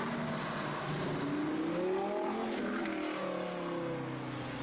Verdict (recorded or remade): recorded